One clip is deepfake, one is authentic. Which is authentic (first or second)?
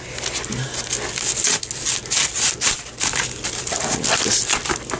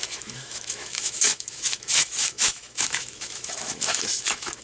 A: first